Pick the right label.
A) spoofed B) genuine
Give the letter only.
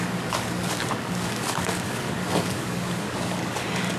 A